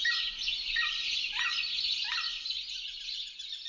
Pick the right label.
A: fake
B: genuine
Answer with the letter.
A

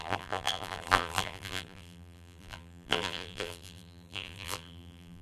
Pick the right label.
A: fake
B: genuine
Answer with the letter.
A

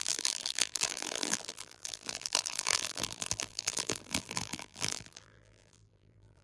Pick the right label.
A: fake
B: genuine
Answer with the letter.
A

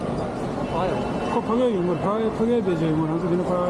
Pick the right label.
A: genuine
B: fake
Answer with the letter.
A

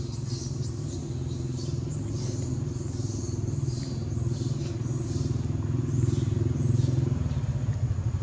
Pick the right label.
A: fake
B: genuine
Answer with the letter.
B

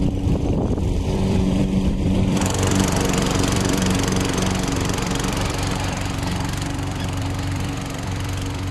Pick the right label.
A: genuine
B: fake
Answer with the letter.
B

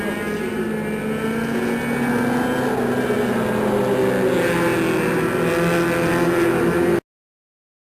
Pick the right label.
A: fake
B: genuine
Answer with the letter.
B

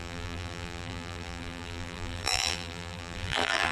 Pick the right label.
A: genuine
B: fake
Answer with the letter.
B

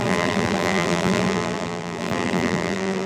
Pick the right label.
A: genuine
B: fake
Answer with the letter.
B